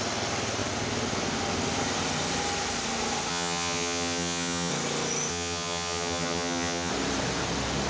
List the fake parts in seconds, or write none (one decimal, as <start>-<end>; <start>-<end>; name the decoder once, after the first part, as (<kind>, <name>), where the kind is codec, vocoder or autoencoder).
3.3-4.7 (vocoder, HiFi-GAN); 5.3-6.9